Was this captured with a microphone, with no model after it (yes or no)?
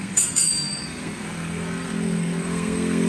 no